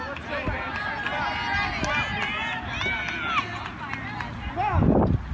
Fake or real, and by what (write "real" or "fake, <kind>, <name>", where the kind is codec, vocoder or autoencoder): real